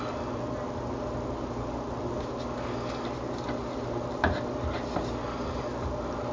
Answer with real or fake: real